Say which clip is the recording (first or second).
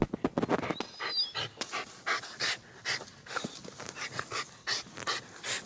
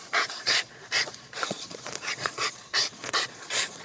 first